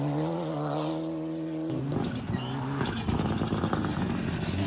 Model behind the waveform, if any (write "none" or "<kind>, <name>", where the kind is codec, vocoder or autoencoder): none